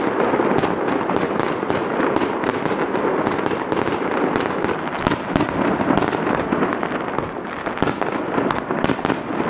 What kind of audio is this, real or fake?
real